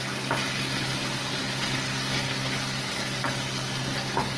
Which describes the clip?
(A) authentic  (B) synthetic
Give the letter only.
A